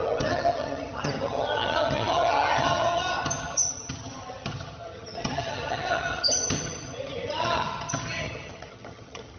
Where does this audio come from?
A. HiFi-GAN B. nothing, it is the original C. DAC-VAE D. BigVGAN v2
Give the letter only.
A